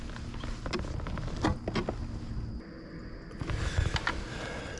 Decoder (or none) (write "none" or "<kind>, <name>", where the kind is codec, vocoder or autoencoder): none